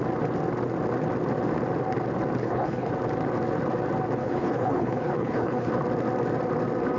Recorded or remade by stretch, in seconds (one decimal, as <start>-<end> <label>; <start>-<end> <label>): 0.0-2.4 recorded; 2.4-2.9 remade; 2.9-4.2 recorded; 4.2-5.7 remade; 5.7-7.0 recorded